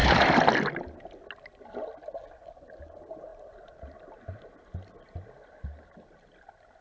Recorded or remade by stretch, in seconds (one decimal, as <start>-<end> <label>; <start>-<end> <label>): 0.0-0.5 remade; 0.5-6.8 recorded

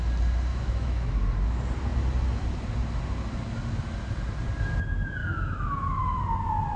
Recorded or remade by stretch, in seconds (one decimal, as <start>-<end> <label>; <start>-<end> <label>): 0.0-0.5 recorded; 0.5-1.1 remade; 1.1-5.2 recorded; 5.2-6.2 remade; 6.2-6.8 recorded

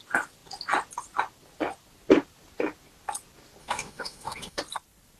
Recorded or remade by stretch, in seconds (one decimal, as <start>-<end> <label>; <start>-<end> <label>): 0.0-3.6 recorded; 3.6-4.6 remade; 4.6-5.2 recorded